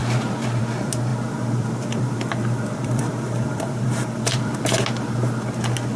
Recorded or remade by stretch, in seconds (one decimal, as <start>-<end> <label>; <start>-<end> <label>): 0.0-0.6 remade; 0.6-1.1 recorded; 1.1-4.6 remade; 4.6-6.0 recorded